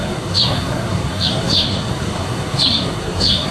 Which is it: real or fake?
fake